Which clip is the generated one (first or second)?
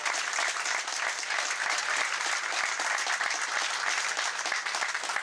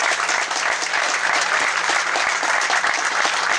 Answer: second